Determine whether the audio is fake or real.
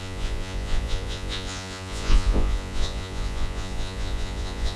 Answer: fake